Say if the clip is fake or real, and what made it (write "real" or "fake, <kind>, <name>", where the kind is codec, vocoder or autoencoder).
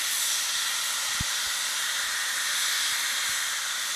real